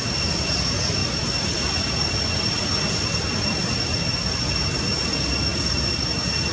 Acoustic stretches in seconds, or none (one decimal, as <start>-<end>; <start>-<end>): 0.0-6.5

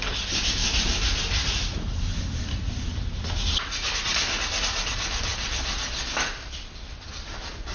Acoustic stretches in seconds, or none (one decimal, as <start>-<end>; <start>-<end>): 0.0-7.7

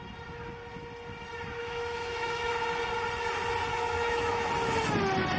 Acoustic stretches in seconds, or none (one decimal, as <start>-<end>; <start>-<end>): 0.0-1.6; 2.5-3.7; 4.5-5.4

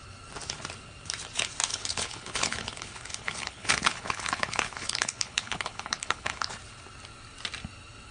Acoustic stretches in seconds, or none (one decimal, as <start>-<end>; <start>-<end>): 0.0-1.7; 6.5-8.1